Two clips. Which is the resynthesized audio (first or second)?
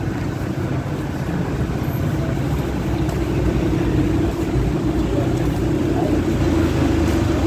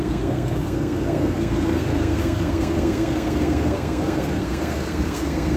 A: second